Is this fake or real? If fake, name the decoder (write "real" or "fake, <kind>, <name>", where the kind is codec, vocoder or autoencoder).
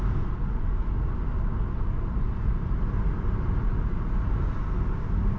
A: real